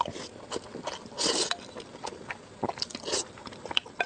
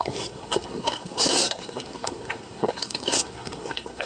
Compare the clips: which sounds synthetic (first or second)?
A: second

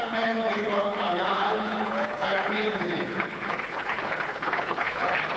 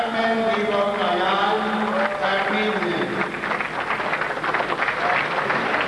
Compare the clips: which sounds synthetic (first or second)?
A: first